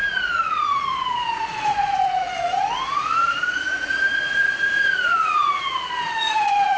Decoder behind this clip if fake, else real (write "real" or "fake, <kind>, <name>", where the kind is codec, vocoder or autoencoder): fake, vocoder, Vocos